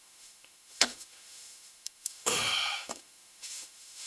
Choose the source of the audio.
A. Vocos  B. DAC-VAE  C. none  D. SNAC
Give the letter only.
B